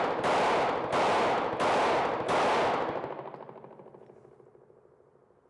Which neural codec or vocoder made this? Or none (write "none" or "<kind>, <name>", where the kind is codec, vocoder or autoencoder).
none